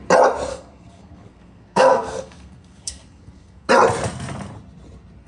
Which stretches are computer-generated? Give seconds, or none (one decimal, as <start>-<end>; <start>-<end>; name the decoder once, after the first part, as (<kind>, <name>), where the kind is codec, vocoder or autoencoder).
0.5-3.7 (codec, SNAC)